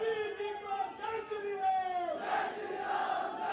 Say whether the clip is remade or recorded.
recorded